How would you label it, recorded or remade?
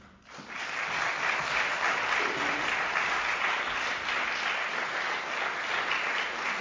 recorded